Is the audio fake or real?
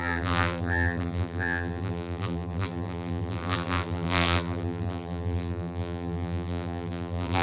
fake